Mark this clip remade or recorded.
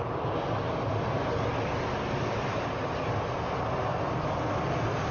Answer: recorded